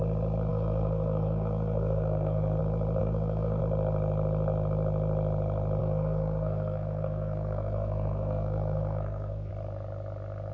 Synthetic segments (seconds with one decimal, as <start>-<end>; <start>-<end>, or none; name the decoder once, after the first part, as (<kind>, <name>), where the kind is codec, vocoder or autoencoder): 0.5-2.6 (codec, SNAC); 3.0-3.6; 5.8-9.5